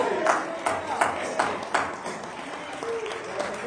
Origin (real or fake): real